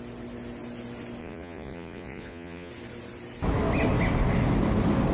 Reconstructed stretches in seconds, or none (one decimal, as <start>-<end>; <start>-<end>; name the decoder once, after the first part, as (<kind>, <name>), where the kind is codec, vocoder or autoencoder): 1.2-2.7 (vocoder, Vocos)